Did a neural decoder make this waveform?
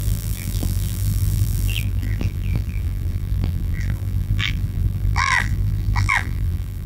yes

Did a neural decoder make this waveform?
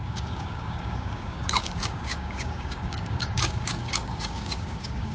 yes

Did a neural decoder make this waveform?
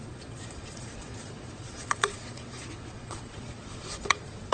yes